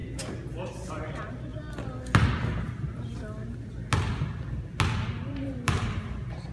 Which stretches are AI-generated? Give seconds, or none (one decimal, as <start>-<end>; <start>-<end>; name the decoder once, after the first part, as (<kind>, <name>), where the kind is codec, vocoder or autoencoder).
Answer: 0.9-1.5 (vocoder, BigVGAN v2); 5.2-6.5